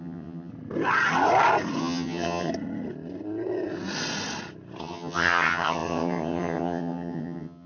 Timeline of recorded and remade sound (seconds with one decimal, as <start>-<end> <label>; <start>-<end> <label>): 0.0-0.5 remade; 0.5-1.8 recorded; 1.8-2.5 remade; 2.5-4.8 recorded; 4.8-7.7 remade